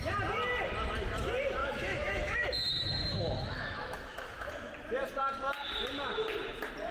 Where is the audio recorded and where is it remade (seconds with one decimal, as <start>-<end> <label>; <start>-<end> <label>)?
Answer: 0.0-1.6 recorded; 1.6-4.7 remade; 4.7-6.9 recorded